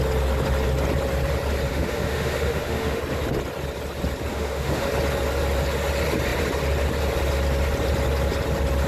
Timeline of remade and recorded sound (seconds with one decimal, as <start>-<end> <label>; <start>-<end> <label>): 0.0-1.7 recorded; 1.7-3.0 remade; 3.0-4.3 recorded; 4.3-4.9 remade; 4.9-8.9 recorded